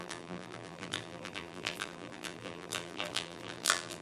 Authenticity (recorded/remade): remade